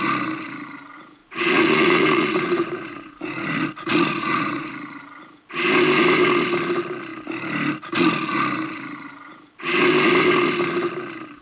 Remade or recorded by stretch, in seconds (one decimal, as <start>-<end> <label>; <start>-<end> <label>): 0.0-1.2 recorded; 1.2-4.7 remade; 4.7-11.4 recorded